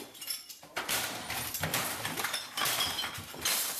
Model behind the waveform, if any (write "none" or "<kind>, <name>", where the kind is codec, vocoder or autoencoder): vocoder, BigVGAN v2